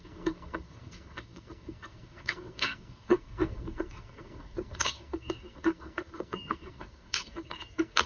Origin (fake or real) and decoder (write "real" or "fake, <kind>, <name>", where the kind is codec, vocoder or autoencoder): fake, codec, SNAC